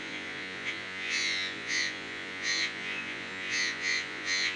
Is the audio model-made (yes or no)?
yes